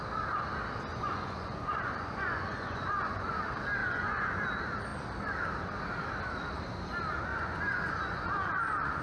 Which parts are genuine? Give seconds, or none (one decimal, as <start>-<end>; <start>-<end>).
0.0-0.9; 3.4-3.8; 4.4-7.3